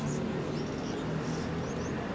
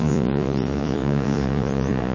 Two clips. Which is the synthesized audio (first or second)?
second